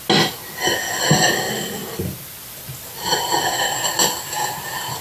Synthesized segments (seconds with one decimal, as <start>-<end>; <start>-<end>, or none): none